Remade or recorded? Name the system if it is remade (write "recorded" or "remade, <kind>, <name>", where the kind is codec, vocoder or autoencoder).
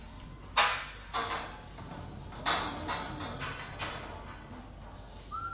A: recorded